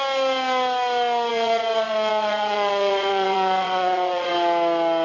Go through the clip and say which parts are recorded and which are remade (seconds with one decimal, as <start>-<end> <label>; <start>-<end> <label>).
0.0-1.3 recorded; 1.3-4.3 remade; 4.3-5.0 recorded